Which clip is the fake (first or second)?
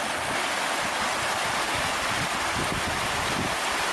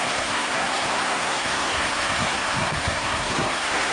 second